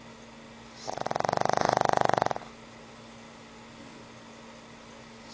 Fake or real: real